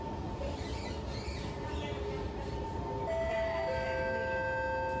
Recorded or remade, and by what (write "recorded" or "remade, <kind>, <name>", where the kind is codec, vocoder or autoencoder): recorded